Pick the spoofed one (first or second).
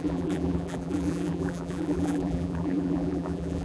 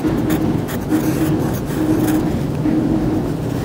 first